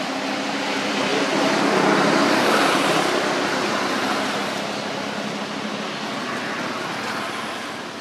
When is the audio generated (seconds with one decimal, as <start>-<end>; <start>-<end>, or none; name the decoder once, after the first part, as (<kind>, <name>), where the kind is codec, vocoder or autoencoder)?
1.1-2.5 (vocoder, BigVGAN v2)